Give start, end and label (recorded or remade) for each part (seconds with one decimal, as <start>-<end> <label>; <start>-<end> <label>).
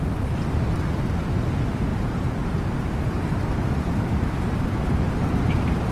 0.0-5.9 recorded